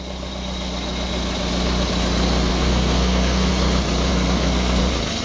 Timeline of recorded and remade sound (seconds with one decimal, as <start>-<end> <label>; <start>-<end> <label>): 0.0-2.5 recorded; 2.5-3.5 remade; 3.5-4.1 recorded; 4.1-4.8 remade; 4.8-5.2 recorded